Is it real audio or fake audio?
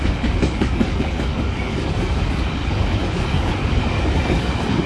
fake